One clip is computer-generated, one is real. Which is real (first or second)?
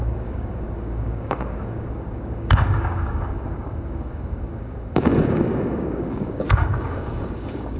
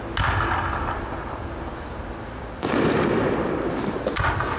second